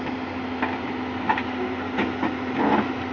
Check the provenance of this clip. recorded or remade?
recorded